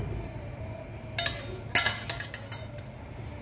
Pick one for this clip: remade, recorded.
recorded